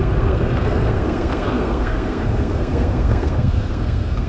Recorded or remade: remade